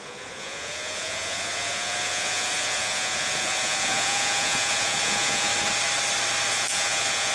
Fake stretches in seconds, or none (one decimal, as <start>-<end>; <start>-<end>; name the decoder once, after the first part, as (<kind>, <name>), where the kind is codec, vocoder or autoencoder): 0.0-5.5 (vocoder, Vocos); 6.5-7.3